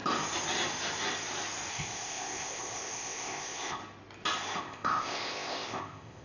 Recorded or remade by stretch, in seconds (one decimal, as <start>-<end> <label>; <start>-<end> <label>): 0.0-1.7 recorded; 1.7-3.8 remade; 3.8-4.6 recorded; 4.6-6.2 remade